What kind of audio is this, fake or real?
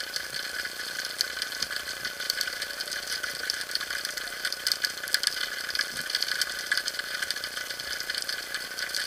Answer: real